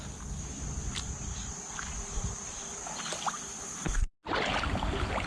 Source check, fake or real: real